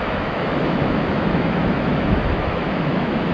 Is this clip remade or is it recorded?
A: remade